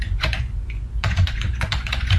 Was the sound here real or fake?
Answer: fake